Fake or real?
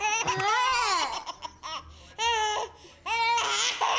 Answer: real